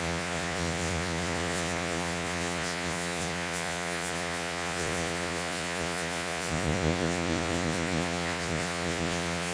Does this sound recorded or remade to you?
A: remade